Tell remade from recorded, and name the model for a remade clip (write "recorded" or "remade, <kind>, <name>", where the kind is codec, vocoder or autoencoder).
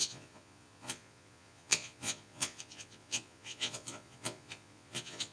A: remade, vocoder, Vocos